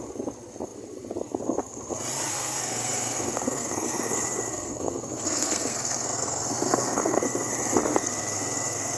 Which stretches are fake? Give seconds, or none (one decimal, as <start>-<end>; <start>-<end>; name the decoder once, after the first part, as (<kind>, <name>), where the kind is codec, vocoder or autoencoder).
2.3-7.5 (codec, SNAC); 7.9-9.0